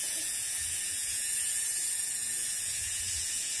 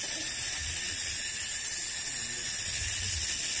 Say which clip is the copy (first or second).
first